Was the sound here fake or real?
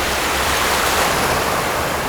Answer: real